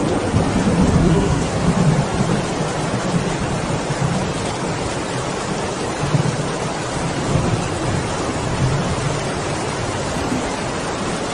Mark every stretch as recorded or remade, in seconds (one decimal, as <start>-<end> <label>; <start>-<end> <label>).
0.0-1.0 recorded; 1.0-1.7 remade; 1.7-11.3 recorded